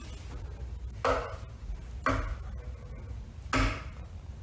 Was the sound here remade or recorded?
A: recorded